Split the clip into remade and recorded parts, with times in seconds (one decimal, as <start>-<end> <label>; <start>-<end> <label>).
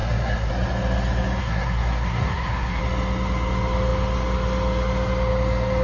0.0-0.5 remade; 0.5-1.4 recorded; 1.4-2.8 remade; 2.8-5.8 recorded